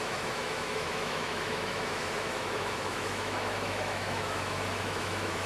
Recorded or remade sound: remade